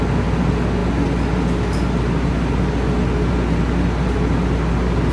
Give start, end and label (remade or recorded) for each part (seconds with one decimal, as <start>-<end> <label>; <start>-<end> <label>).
0.0-5.1 recorded